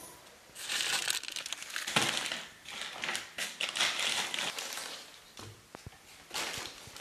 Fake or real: real